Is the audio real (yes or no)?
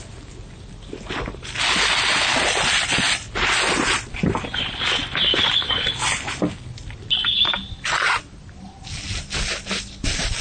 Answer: yes